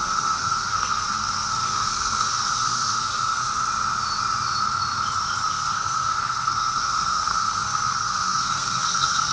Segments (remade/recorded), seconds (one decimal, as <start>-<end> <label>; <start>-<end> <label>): 0.0-3.4 remade; 3.4-5.5 recorded; 5.5-9.3 remade